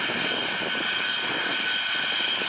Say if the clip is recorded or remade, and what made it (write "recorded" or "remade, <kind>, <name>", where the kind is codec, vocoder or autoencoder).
recorded